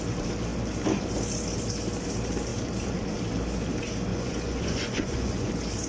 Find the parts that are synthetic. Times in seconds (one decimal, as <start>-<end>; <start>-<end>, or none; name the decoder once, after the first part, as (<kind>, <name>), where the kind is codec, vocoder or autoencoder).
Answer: 4.1-5.5 (vocoder, Vocos)